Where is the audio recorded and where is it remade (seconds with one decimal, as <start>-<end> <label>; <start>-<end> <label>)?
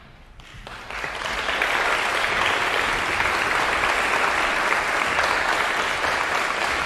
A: 0.0-0.5 recorded; 0.5-1.7 remade; 1.7-6.9 recorded